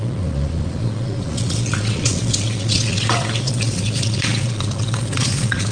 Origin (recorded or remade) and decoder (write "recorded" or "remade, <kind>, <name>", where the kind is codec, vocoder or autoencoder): remade, vocoder, Vocos